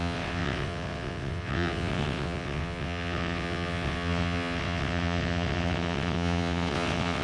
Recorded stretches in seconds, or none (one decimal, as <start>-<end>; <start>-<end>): none